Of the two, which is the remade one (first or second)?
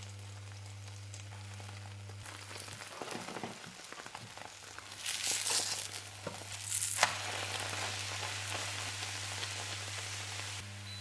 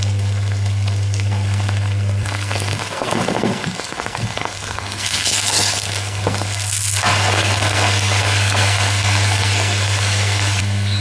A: second